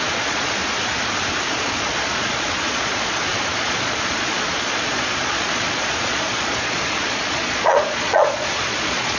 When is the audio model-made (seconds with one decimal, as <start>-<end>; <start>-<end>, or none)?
0.0-0.6; 1.5-9.2